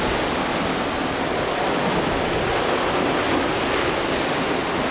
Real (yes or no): yes